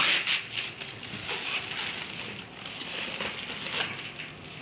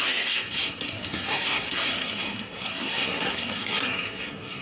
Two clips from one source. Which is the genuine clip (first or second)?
first